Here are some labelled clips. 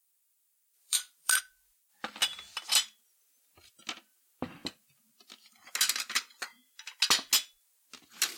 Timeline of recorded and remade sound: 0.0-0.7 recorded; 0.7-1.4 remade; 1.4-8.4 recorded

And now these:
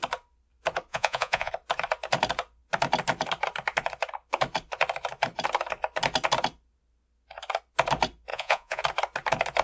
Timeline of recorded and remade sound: 0.0-0.9 recorded; 0.9-1.5 remade; 1.5-8.3 recorded; 8.3-8.8 remade; 8.8-9.6 recorded

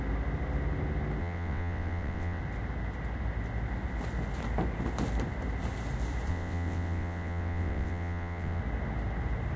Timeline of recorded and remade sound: 0.0-1.2 recorded; 1.2-2.4 remade; 2.4-6.3 recorded; 6.3-8.6 remade; 8.6-9.6 recorded